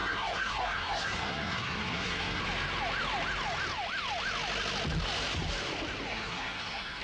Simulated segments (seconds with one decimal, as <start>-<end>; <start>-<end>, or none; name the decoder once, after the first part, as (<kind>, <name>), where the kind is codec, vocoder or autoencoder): 0.0-2.4 (codec, SNAC); 6.1-7.0